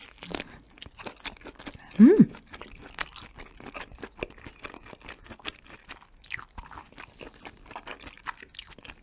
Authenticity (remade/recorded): recorded